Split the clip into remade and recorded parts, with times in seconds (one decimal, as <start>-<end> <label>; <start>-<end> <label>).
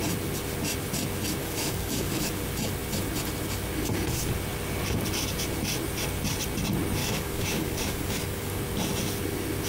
0.0-1.4 recorded; 1.4-2.3 remade; 2.3-7.0 recorded; 7.0-8.6 remade; 8.6-9.7 recorded